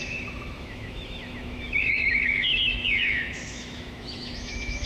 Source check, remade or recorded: remade